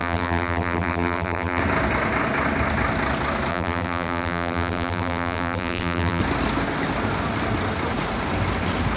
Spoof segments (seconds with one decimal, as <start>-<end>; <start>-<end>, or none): 0.0-1.6; 3.5-6.2